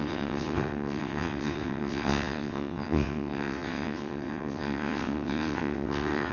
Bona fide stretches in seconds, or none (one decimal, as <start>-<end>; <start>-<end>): none